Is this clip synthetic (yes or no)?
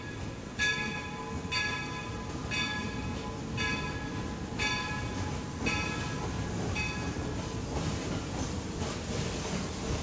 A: no